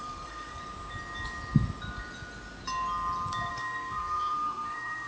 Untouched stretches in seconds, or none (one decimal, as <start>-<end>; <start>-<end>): 0.6-3.5